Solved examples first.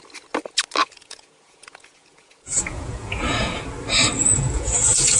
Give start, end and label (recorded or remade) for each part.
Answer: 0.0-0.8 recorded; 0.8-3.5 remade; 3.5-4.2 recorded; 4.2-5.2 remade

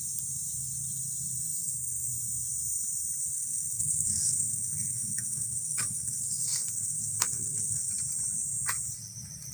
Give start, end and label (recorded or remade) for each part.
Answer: 0.0-1.6 recorded; 1.6-2.1 remade; 2.1-3.2 recorded; 3.2-7.9 remade; 7.9-9.5 recorded